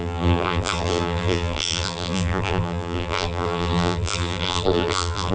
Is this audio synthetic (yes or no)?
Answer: yes